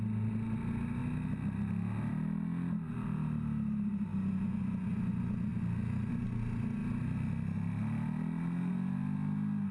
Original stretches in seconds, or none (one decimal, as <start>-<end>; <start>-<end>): 0.0-9.7